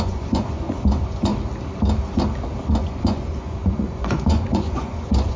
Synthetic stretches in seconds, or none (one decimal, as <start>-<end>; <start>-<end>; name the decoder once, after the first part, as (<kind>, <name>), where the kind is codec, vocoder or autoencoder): 0.0-1.3 (vocoder, Vocos); 2.7-5.4